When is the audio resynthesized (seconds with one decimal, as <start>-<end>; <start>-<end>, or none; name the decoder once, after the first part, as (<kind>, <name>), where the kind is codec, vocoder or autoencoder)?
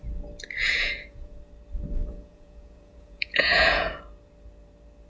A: 0.6-1.4 (vocoder, Vocos); 2.0-4.0